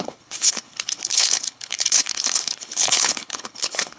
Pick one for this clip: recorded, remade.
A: remade